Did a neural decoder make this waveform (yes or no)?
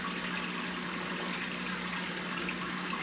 no